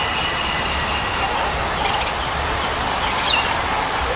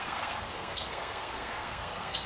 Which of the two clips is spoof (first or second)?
second